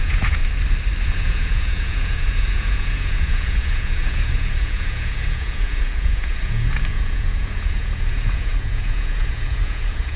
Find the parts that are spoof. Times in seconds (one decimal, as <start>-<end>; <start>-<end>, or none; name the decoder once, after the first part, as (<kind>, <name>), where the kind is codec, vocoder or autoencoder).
0.0-0.4 (vocoder, Vocos); 1.0-10.2